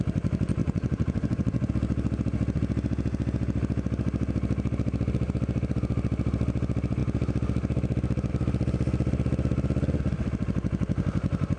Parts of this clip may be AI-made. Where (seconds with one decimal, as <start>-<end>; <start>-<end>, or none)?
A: 0.6-1.7